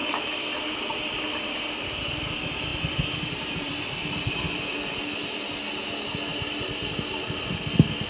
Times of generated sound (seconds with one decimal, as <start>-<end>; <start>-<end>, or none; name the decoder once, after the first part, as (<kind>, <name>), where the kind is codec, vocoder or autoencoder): 2.7-4.7 (vocoder, BigVGAN v2)